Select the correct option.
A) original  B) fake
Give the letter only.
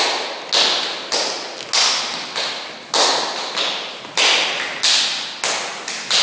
A